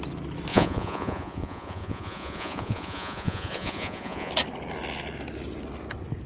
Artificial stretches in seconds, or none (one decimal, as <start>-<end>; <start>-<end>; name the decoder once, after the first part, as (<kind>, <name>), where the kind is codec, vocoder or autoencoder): 0.5-4.3 (vocoder, Vocos)